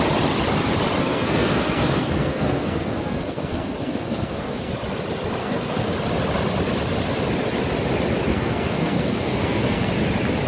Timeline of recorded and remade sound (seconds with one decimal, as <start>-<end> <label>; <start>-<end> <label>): 0.0-1.0 recorded; 1.0-4.7 remade; 4.7-5.4 recorded; 5.4-5.9 remade; 5.9-8.3 recorded; 8.3-9.9 remade; 9.9-10.5 recorded